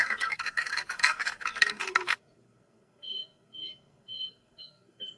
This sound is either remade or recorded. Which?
remade